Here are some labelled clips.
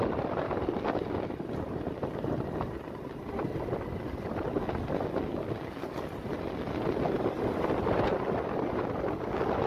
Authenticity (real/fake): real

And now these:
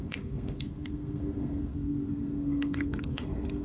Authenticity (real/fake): fake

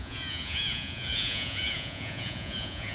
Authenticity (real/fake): fake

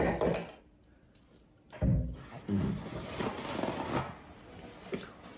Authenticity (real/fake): real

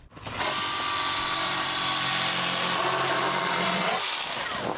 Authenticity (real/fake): real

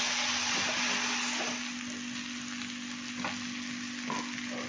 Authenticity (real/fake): real